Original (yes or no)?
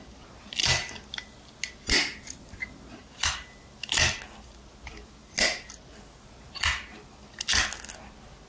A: yes